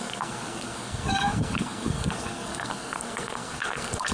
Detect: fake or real fake